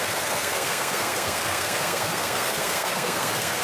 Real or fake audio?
fake